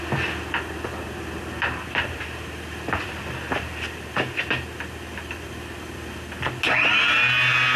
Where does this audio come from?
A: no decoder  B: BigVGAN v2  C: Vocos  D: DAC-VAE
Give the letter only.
A